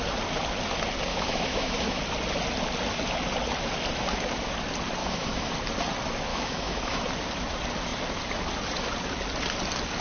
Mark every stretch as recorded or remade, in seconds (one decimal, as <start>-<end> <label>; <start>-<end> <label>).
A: 0.0-1.1 recorded; 1.1-2.0 remade; 2.0-5.0 recorded; 5.0-5.5 remade; 5.5-6.3 recorded; 6.3-7.0 remade; 7.0-10.0 recorded

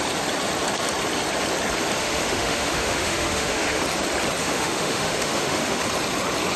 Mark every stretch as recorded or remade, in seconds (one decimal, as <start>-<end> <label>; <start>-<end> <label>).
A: 0.0-2.0 recorded; 2.0-3.8 remade; 3.8-4.4 recorded; 4.4-5.8 remade; 5.8-6.6 recorded

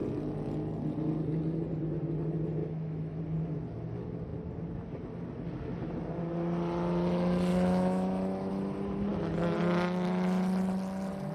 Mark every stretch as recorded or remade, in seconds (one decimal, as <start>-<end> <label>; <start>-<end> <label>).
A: 0.0-2.6 recorded; 2.6-3.2 remade; 3.2-7.5 recorded; 7.5-8.5 remade; 8.5-11.3 recorded

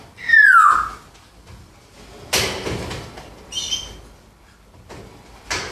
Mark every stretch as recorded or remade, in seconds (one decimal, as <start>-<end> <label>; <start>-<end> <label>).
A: 0.0-5.7 recorded

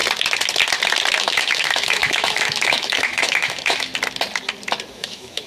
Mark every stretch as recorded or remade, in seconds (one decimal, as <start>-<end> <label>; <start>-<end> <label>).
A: 0.0-1.2 recorded; 1.2-3.9 remade; 3.9-4.9 recorded; 4.9-5.5 remade

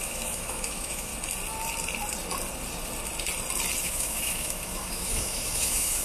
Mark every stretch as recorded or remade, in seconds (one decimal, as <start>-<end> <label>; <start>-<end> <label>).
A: 0.0-1.1 remade; 1.1-3.8 recorded; 3.8-6.0 remade

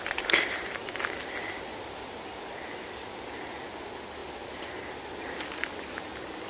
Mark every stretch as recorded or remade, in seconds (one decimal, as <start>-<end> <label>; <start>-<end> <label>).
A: 0.0-6.5 recorded

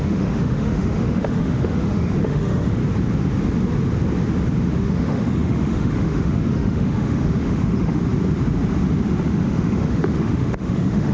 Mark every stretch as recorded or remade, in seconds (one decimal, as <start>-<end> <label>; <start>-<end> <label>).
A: 0.0-2.8 remade; 2.8-4.7 recorded; 4.7-8.0 remade; 8.0-9.2 recorded; 9.2-11.1 remade